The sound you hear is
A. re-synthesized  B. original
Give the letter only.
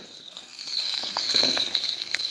A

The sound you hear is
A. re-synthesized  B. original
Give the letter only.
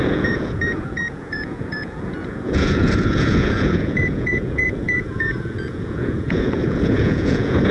A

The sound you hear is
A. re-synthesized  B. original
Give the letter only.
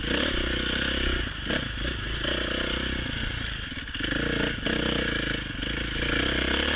B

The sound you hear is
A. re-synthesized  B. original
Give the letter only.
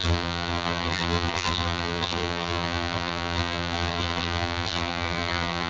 A